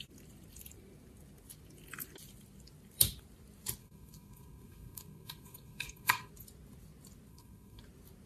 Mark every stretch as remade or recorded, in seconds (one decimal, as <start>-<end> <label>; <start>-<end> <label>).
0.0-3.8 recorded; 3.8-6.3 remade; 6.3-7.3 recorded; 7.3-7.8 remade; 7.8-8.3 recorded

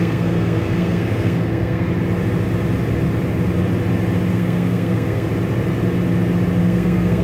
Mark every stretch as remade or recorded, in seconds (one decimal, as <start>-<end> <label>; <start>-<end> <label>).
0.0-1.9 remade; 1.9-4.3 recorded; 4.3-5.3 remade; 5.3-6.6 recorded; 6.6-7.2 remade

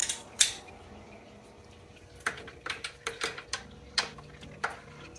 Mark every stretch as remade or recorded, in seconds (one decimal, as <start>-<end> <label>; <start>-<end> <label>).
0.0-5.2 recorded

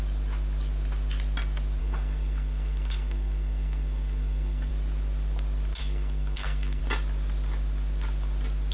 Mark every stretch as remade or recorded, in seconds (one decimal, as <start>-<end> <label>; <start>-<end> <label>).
0.0-1.8 recorded; 1.8-4.7 remade; 4.7-5.8 recorded; 5.8-6.8 remade; 6.8-8.7 recorded